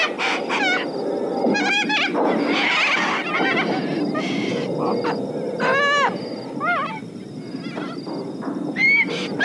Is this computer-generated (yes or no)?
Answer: no